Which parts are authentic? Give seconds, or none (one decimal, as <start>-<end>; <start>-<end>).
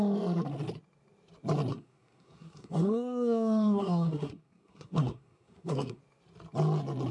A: 0.0-1.7; 6.0-7.1